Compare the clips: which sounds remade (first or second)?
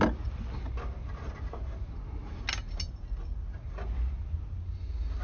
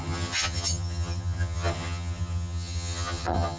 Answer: second